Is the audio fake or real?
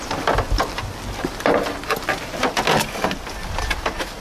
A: real